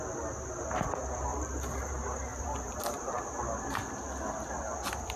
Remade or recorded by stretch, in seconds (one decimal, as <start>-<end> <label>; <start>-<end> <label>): 0.0-1.3 recorded; 1.3-1.9 remade; 1.9-2.3 recorded; 2.3-2.8 remade; 2.8-5.2 recorded